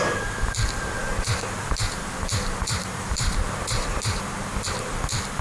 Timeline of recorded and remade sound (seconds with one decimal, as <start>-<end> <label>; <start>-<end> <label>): 0.0-1.0 recorded; 1.0-4.2 remade; 4.2-5.4 recorded